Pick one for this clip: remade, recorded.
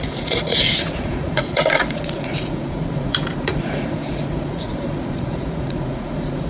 remade